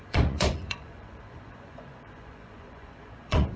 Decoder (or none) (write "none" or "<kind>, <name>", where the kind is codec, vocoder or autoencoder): vocoder, Vocos